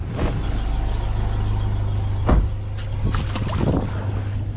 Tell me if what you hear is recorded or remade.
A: recorded